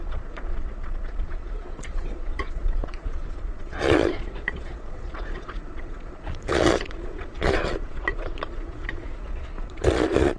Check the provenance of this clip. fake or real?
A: fake